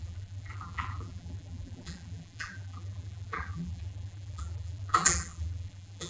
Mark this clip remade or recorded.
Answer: remade